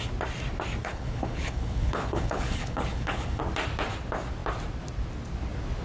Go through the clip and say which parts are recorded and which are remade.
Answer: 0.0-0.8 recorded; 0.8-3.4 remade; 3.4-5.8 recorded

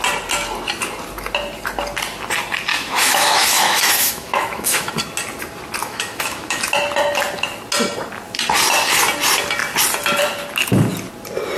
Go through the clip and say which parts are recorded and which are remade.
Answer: 0.0-2.7 recorded; 2.7-4.9 remade; 4.9-5.8 recorded; 5.8-6.6 remade; 6.6-11.6 recorded